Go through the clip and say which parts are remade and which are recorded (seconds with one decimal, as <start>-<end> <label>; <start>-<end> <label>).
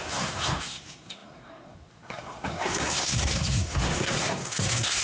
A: 0.0-5.0 remade